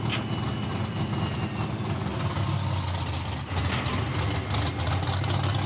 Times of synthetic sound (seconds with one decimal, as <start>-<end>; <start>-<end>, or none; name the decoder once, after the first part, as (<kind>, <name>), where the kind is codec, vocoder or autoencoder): none